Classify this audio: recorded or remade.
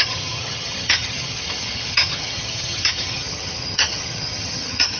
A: remade